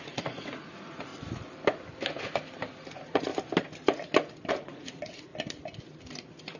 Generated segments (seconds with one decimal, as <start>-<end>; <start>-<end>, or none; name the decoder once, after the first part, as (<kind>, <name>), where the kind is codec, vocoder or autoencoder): 0.0-1.1 (vocoder, Vocos); 2.9-3.3; 4.5-5.3